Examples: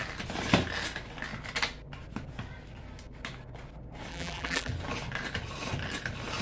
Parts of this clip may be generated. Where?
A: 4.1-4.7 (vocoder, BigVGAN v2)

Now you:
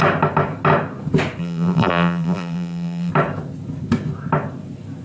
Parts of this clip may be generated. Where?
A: 1.4-3.1 (vocoder, BigVGAN v2)

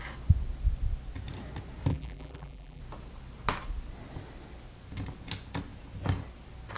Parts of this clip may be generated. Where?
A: 1.9-2.8 (vocoder, BigVGAN v2)

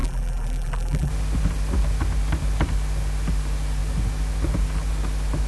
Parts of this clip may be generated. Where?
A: 0.0-1.1 (vocoder, BigVGAN v2)

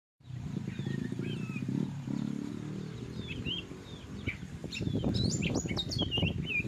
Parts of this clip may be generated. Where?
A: 0.0-2.5 (vocoder, BigVGAN v2); 4.6-5.7

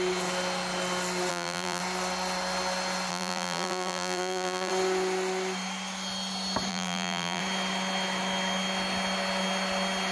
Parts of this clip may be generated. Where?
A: 1.3-1.8 (vocoder, BigVGAN v2); 3.1-4.7; 6.7-7.4

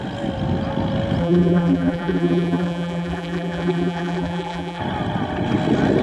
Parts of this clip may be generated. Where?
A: 1.2-4.8 (vocoder, BigVGAN v2)